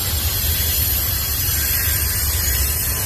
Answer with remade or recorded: remade